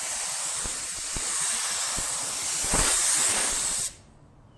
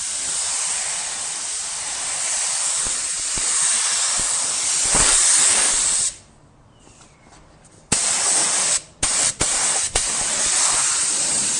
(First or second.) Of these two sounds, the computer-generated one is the second